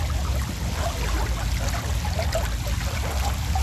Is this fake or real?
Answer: real